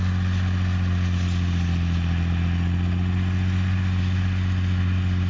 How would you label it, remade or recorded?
recorded